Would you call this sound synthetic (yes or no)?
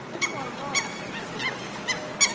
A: no